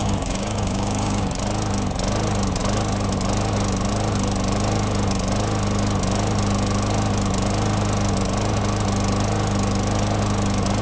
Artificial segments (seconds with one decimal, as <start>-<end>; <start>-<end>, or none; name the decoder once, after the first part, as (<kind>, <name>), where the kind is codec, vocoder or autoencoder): 0.0-1.4 (codec, DAC)